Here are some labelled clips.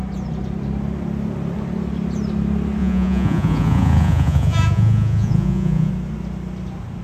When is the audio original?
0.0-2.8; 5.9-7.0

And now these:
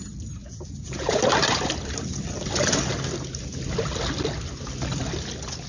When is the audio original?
0.0-0.4; 1.2-5.7

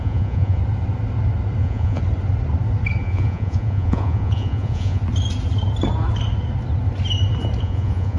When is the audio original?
0.6-1.6; 2.0-3.0; 5.0-7.6

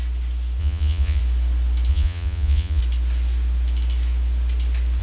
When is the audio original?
0.0-0.6; 1.2-1.9; 2.8-5.0

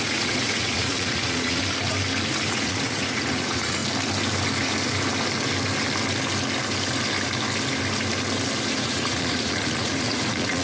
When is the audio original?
1.6-2.5; 3.8-8.8

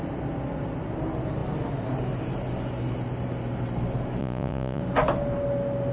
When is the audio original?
0.0-4.2; 4.8-5.9

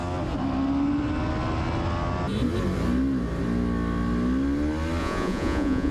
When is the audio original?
0.0-5.0

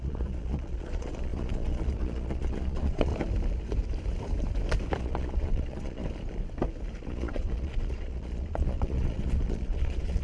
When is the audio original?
3.1-5.0; 6.0-7.0